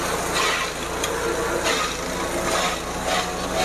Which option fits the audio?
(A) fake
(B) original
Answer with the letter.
B